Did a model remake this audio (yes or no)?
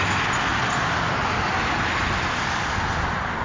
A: no